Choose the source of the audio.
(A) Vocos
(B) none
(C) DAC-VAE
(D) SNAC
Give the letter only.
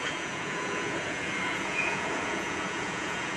A